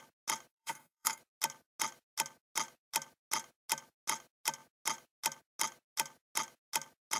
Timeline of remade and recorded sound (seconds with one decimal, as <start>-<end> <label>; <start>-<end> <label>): 0.0-0.5 recorded; 0.5-1.2 remade; 1.2-7.2 recorded